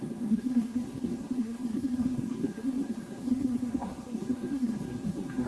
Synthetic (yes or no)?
yes